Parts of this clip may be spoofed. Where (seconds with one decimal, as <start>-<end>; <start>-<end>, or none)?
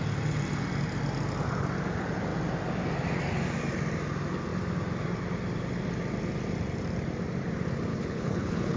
7.9-8.8